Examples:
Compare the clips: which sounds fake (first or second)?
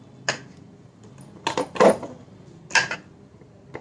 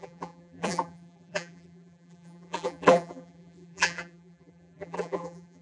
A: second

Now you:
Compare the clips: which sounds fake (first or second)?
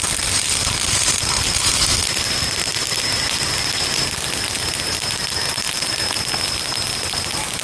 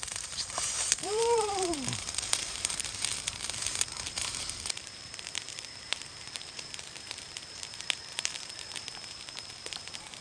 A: second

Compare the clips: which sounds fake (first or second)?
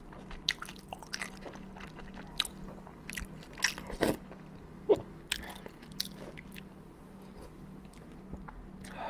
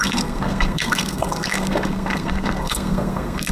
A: second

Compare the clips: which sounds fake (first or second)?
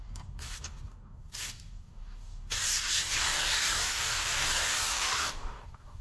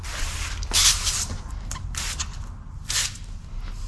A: first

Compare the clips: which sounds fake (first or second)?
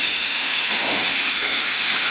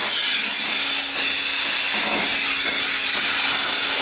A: first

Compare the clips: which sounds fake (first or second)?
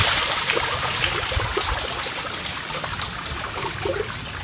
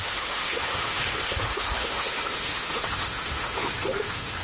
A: second